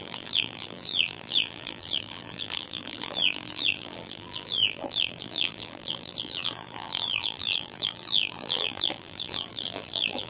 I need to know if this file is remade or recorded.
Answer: remade